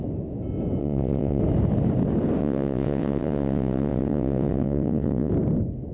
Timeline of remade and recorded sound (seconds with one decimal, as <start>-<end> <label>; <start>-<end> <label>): 0.0-0.8 recorded; 0.8-1.4 remade; 1.4-2.4 recorded; 2.4-5.3 remade; 5.3-5.9 recorded